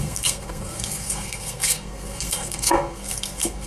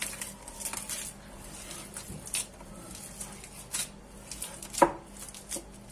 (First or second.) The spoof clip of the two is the first